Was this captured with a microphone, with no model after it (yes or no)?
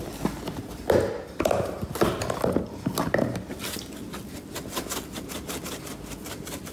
yes